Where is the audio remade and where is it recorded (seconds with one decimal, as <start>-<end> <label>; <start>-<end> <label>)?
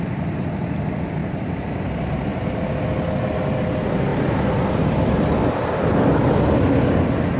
0.0-7.4 recorded